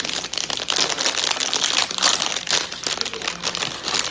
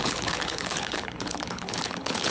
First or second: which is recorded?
first